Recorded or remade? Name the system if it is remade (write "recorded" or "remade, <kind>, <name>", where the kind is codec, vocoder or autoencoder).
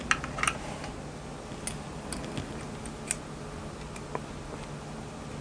recorded